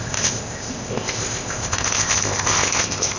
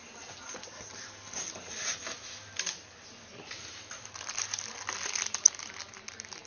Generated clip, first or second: first